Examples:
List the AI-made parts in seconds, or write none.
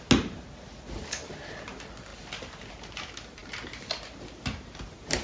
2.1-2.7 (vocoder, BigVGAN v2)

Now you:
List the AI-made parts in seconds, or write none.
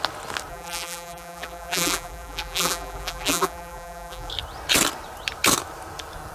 0.5-4.3 (vocoder, BigVGAN v2)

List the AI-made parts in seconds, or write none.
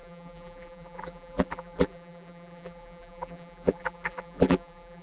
0.0-5.0 (vocoder, BigVGAN v2)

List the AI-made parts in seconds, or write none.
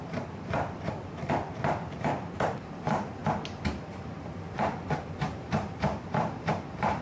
0.0-3.2 (vocoder, BigVGAN v2); 4.1-7.0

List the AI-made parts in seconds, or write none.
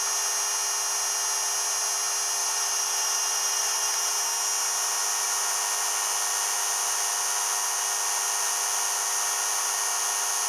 2.4-4.1 (vocoder, BigVGAN v2)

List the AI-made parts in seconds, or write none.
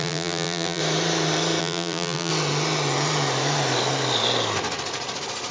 0.0-0.8 (vocoder, BigVGAN v2); 1.6-2.3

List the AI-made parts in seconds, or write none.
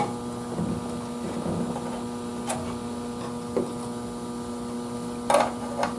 none